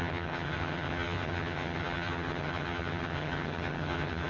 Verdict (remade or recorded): remade